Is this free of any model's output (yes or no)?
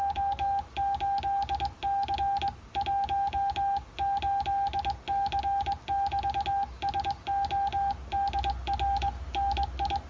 yes